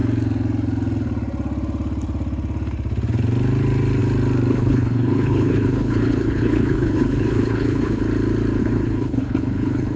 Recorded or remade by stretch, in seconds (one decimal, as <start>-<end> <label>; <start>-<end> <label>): 0.0-4.5 recorded; 4.5-8.0 remade; 8.0-8.6 recorded; 8.6-10.0 remade